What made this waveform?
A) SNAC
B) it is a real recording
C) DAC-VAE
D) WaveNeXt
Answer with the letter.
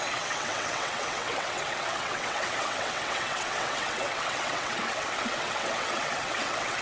D